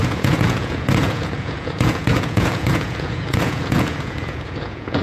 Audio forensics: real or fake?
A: fake